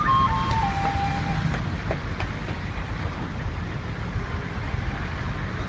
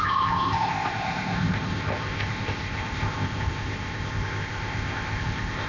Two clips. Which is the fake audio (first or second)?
second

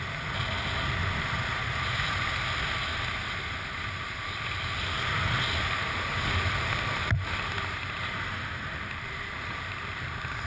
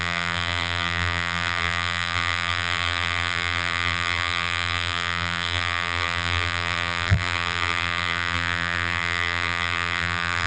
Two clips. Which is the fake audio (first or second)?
second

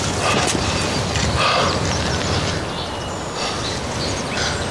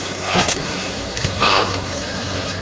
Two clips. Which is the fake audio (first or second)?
second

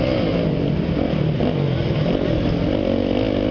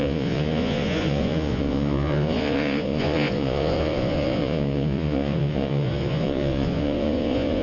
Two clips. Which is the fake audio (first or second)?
second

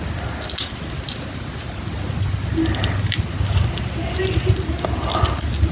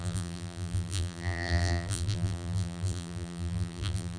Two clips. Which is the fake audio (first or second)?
second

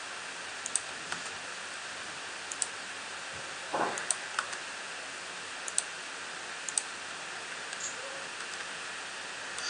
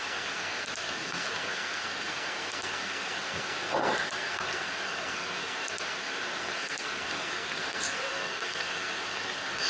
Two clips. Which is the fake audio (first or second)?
second